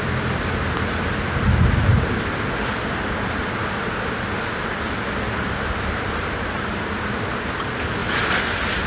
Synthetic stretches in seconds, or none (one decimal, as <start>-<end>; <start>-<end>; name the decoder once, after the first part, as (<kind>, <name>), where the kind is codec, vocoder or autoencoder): none